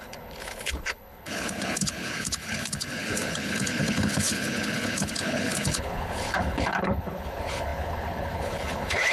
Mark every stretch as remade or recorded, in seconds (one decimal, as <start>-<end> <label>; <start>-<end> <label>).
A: 0.0-9.1 remade